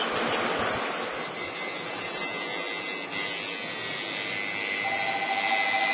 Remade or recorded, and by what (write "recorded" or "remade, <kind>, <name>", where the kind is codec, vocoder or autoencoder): recorded